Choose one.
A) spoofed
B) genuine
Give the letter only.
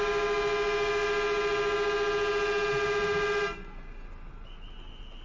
B